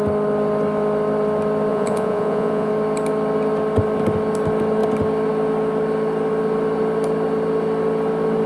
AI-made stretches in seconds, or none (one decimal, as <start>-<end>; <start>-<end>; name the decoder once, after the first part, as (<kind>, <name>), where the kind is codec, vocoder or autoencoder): 1.7-2.7 (vocoder, Vocos)